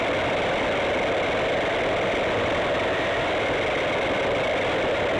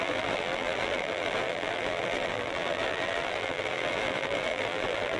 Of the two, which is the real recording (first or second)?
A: first